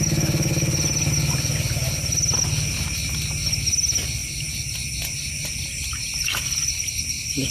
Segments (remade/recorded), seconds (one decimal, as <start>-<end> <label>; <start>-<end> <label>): 0.0-7.5 recorded